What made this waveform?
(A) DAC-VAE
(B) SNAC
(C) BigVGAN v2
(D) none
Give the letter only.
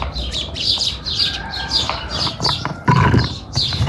C